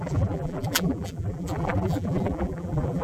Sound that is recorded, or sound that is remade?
remade